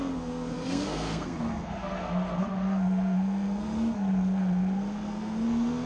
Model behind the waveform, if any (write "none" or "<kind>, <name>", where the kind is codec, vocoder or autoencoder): codec, SNAC